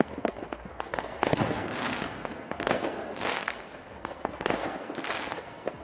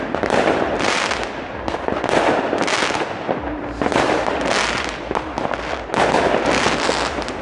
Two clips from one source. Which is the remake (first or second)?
first